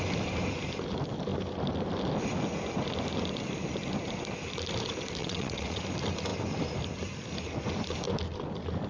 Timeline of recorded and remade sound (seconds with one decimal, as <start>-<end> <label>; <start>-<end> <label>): 0.0-5.2 recorded; 5.2-5.8 remade; 5.8-8.9 recorded